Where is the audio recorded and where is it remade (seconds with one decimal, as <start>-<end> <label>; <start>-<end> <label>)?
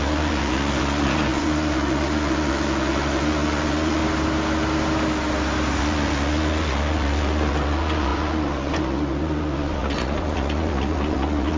0.0-4.0 remade; 4.0-5.8 recorded; 5.8-11.6 remade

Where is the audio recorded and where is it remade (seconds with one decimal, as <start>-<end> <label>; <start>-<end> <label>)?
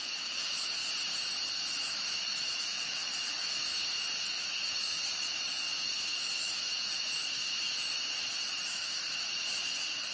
0.0-0.8 remade; 0.8-1.8 recorded; 1.8-3.7 remade; 3.7-4.3 recorded; 4.3-10.1 remade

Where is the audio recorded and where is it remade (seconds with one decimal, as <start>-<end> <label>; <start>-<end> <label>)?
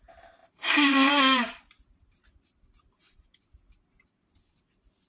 0.0-0.4 recorded; 0.4-2.2 remade; 2.2-5.1 recorded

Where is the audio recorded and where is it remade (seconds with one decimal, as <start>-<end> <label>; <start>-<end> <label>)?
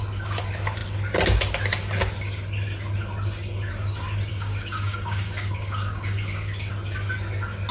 0.0-4.3 recorded; 4.3-6.7 remade; 6.7-7.7 recorded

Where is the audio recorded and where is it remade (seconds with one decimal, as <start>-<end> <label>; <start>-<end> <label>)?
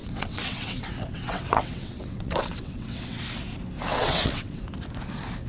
0.0-3.2 remade; 3.2-3.9 recorded; 3.9-4.6 remade; 4.6-5.5 recorded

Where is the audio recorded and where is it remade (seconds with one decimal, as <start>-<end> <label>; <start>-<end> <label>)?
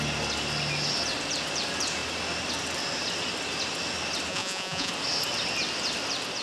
0.0-4.3 recorded; 4.3-4.9 remade; 4.9-6.4 recorded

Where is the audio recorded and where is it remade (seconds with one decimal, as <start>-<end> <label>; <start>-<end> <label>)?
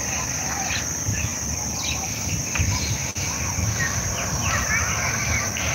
0.0-3.0 recorded; 3.0-4.7 remade; 4.7-5.7 recorded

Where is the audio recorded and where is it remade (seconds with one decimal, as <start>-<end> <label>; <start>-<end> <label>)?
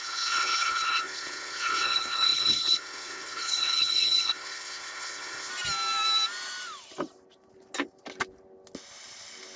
0.0-5.5 remade; 5.5-9.6 recorded